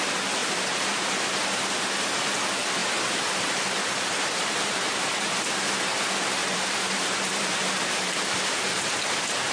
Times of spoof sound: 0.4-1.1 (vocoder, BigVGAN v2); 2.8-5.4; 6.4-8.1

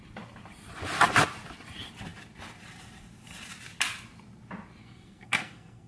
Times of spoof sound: 4.8-5.9 (codec, SNAC)

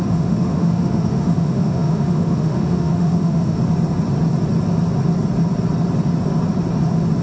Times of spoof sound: 0.0-3.6 (autoencoder, DAC-VAE)

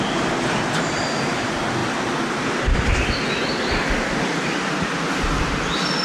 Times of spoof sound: none

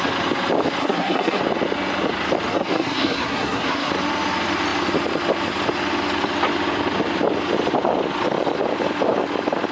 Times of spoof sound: 0.8-1.4 (codec, SNAC); 2.5-3.9